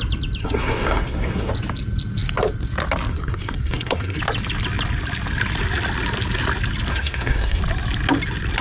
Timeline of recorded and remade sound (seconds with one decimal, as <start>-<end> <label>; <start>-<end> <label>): 0.0-0.4 recorded; 0.4-1.5 remade; 1.5-3.1 recorded; 3.1-4.2 remade; 4.2-6.9 recorded; 6.9-7.6 remade; 7.6-8.6 recorded